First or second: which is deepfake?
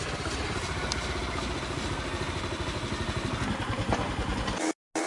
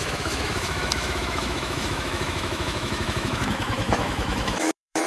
second